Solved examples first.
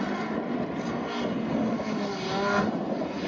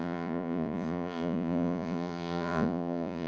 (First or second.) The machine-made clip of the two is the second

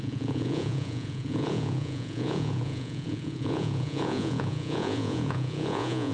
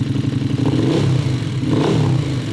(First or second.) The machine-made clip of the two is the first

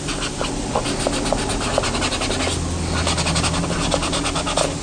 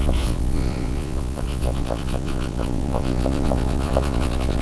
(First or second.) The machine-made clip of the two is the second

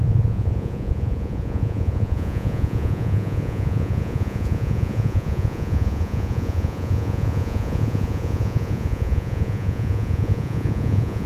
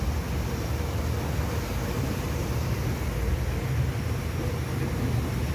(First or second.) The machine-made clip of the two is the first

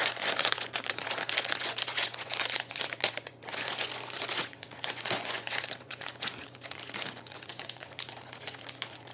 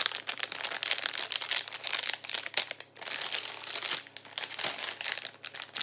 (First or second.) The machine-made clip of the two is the first